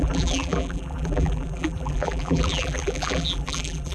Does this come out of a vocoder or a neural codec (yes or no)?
yes